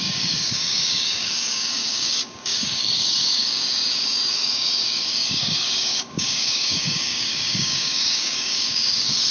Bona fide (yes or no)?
no